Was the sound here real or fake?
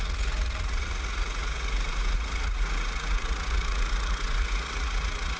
fake